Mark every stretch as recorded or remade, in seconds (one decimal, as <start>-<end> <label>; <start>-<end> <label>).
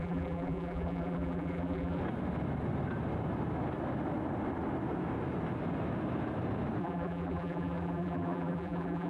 0.0-2.0 remade; 2.0-6.8 recorded; 6.8-9.1 remade